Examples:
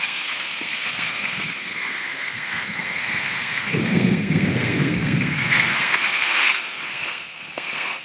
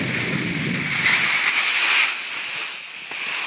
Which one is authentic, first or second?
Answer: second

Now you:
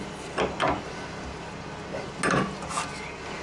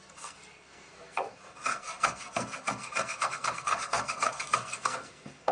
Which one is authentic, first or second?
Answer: first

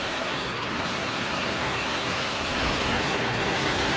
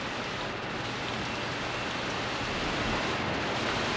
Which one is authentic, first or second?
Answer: second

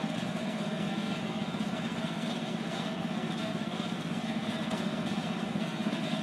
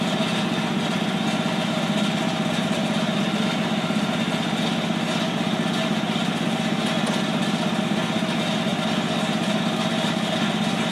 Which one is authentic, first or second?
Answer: second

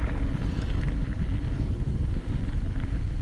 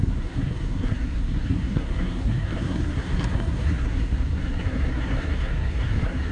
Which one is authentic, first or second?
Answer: first